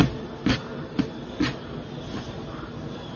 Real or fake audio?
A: real